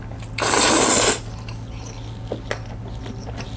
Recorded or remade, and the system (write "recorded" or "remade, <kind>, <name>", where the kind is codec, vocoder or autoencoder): recorded